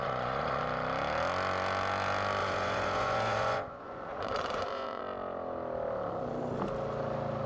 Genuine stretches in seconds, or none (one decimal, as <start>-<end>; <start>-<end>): 0.6-2.4; 5.0-7.5